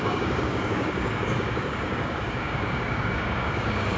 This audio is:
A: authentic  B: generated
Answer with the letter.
B